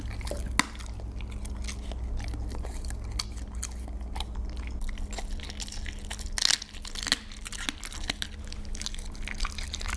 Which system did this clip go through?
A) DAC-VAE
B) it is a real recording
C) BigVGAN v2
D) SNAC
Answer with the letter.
B